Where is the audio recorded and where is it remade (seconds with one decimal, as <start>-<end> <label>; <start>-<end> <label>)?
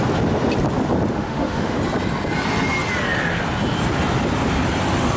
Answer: 0.0-1.1 recorded; 1.1-1.8 remade; 1.8-5.2 recorded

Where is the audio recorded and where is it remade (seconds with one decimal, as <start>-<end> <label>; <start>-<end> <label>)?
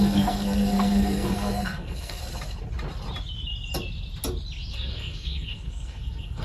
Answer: 0.0-2.2 remade; 2.2-4.7 recorded; 4.7-6.4 remade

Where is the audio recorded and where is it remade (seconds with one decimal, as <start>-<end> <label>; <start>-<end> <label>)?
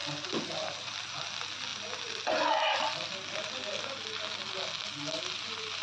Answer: 0.0-5.8 recorded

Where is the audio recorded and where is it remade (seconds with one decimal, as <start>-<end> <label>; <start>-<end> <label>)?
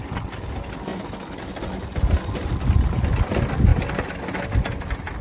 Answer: 0.0-5.2 recorded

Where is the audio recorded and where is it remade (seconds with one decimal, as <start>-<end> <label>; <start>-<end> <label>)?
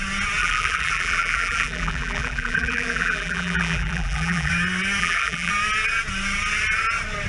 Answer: 0.0-0.4 recorded; 0.4-4.5 remade; 4.5-5.0 recorded; 5.0-5.5 remade; 5.5-7.3 recorded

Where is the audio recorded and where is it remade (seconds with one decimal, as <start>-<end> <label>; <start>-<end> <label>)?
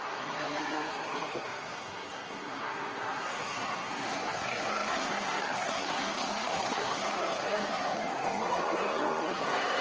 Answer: 0.0-9.8 remade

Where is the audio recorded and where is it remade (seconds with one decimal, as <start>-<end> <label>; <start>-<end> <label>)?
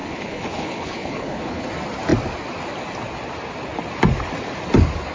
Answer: 0.0-1.7 remade; 1.7-5.1 recorded